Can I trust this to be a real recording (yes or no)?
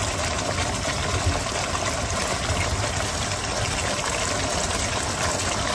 yes